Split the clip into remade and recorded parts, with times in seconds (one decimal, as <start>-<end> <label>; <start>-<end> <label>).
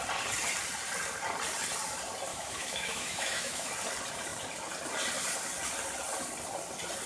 0.0-2.3 recorded; 2.3-3.7 remade; 3.7-7.1 recorded